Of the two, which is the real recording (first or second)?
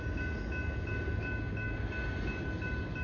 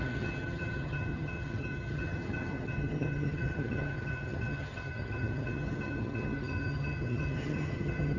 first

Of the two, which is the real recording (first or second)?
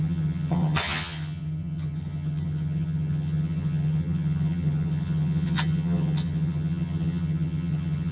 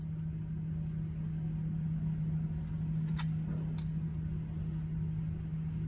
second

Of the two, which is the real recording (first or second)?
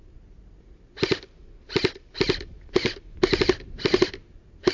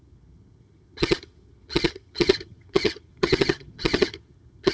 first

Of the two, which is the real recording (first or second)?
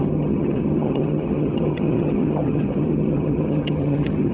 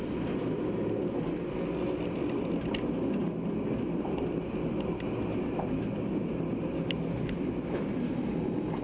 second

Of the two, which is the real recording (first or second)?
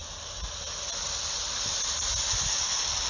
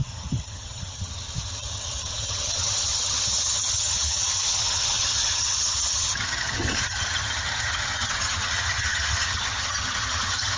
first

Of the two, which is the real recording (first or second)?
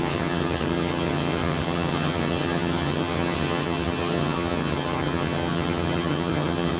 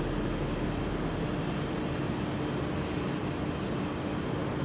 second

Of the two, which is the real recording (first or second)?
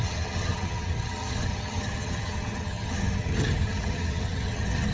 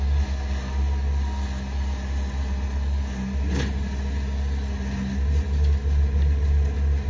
second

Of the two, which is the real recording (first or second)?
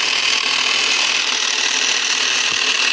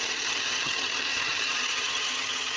first